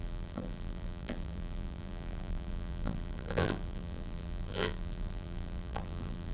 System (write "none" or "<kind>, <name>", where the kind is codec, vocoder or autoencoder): vocoder, BigVGAN v2